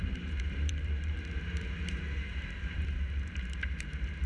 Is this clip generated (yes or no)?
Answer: yes